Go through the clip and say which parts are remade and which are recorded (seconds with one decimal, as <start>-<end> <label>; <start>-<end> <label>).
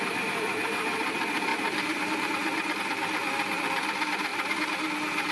0.0-4.3 remade; 4.3-5.3 recorded